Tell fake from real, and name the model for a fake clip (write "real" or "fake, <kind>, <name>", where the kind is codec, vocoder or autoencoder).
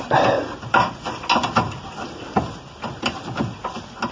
real